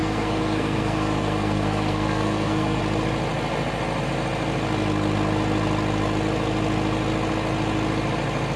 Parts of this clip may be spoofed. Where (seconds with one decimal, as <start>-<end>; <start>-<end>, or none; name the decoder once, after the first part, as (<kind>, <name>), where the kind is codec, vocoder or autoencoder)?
0.0-2.8 (codec, SNAC)